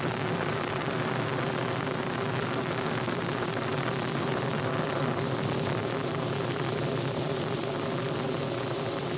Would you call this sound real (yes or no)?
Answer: yes